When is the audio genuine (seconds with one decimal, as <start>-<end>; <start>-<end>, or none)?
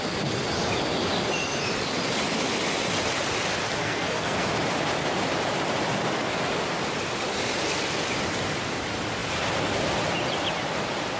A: 0.0-3.8; 4.5-11.2